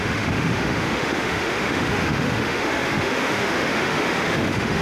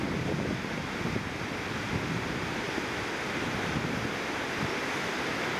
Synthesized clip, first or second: first